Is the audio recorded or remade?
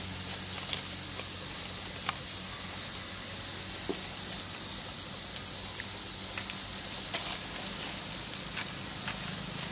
recorded